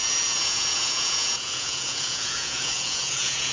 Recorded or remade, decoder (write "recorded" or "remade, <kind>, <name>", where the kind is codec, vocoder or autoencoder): remade, vocoder, Vocos